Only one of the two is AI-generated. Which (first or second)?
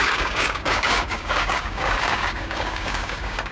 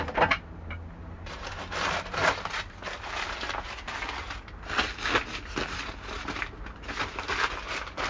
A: first